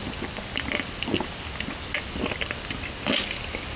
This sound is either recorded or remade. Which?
recorded